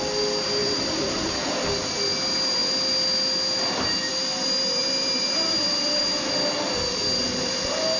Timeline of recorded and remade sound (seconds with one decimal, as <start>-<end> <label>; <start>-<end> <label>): 0.0-0.6 recorded; 0.6-1.3 remade; 1.3-4.8 recorded; 4.8-6.0 remade; 6.0-8.0 recorded